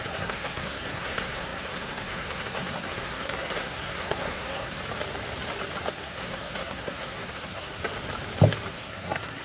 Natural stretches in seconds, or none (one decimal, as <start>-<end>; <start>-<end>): 4.8-5.9; 7.8-8.7